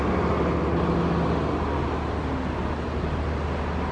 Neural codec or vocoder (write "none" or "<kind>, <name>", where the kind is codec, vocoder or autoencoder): none